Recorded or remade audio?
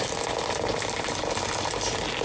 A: recorded